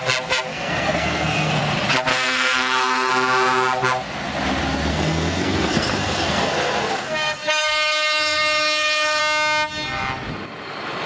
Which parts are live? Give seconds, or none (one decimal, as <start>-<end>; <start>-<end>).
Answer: 0.0-0.5; 1.6-2.1; 3.1-4.9; 9.2-11.1